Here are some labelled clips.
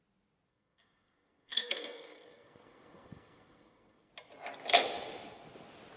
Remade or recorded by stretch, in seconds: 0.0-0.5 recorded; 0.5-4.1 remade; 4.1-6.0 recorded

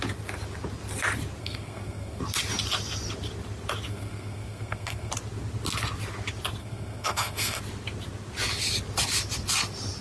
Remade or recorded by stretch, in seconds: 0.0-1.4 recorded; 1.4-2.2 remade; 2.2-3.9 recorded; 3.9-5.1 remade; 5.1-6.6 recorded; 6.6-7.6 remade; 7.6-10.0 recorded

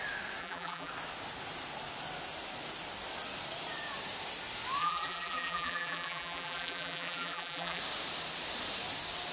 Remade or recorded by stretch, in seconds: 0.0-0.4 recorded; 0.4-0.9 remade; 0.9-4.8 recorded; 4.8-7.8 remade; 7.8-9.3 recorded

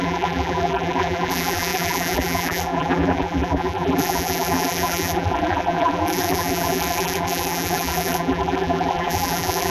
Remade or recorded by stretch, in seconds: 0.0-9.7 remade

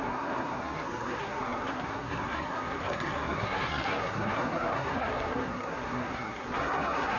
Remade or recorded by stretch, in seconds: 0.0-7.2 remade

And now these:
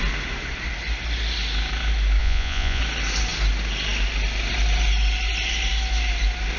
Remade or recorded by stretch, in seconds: 0.0-2.2 recorded; 2.2-2.8 remade; 2.8-6.6 recorded

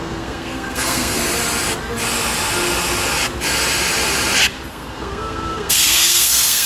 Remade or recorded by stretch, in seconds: 0.0-1.2 remade; 1.2-4.7 recorded; 4.7-6.7 remade